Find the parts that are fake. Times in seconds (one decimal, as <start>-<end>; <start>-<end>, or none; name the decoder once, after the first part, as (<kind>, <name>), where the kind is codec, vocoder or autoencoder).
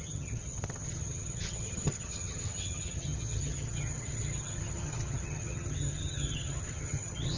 0.0-7.4 (vocoder, HiFi-GAN)